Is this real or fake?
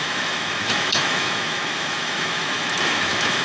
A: fake